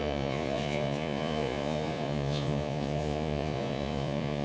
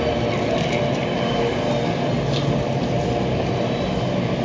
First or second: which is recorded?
second